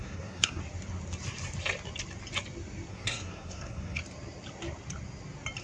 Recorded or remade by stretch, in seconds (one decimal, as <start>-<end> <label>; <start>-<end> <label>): 0.0-0.6 remade; 0.6-2.9 recorded; 2.9-4.0 remade; 4.0-5.6 recorded